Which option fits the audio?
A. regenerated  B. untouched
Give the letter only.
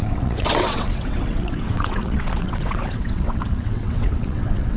A